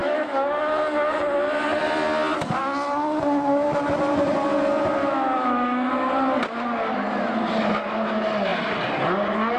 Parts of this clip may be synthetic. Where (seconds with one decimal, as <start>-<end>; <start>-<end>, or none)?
0.0-0.6; 5.0-5.9